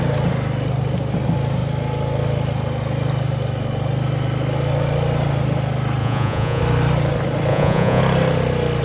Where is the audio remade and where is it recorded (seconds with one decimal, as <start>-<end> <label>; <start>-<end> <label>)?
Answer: 0.0-6.0 recorded; 6.0-6.6 remade; 6.6-7.5 recorded; 7.5-8.0 remade; 8.0-8.8 recorded